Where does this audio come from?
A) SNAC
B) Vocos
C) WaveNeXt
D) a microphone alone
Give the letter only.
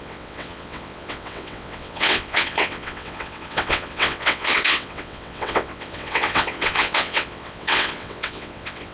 C